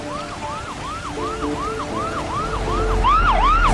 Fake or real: real